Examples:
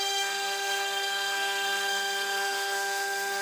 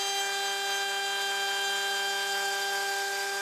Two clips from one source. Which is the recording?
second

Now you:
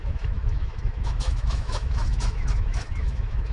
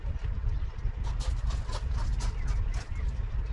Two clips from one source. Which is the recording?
second